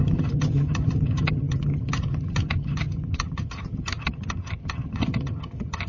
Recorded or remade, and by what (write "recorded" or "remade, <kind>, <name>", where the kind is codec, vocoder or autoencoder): remade, vocoder, HiFi-GAN